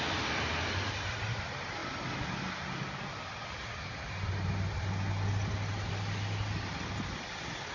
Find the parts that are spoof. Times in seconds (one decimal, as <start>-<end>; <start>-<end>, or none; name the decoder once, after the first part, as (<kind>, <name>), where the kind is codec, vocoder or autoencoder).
none